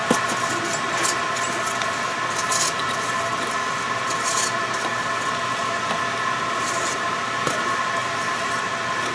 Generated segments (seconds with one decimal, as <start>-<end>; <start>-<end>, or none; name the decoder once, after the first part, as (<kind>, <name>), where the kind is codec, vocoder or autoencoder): 8.0-8.7 (vocoder, BigVGAN v2)